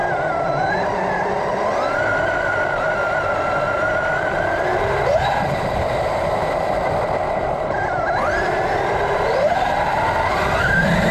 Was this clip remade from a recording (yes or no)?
no